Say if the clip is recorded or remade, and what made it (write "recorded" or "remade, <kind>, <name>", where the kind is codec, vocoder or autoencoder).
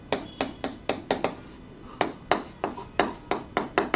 recorded